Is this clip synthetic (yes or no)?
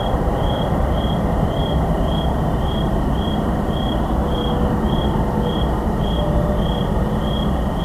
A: no